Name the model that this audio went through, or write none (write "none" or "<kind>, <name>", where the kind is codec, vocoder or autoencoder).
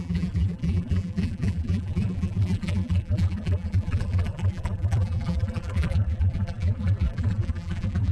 vocoder, BigVGAN v2